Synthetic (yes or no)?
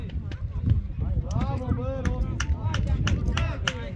no